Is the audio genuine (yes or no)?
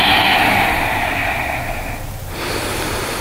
yes